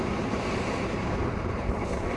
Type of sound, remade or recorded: remade